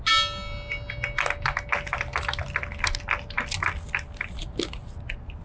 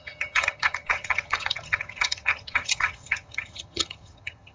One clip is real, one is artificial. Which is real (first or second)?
first